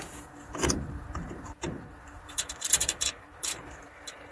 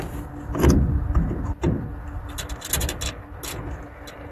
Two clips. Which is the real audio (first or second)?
second